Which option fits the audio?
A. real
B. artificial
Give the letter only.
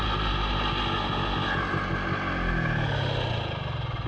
A